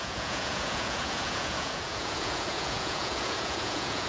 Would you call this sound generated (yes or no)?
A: yes